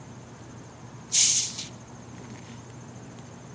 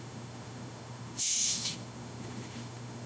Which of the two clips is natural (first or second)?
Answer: first